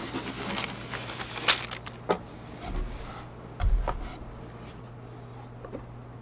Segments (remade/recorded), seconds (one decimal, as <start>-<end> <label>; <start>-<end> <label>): 0.0-6.2 recorded